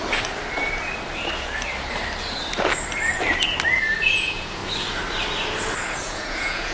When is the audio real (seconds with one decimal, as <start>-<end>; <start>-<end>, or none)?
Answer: 0.0-4.0; 4.6-6.0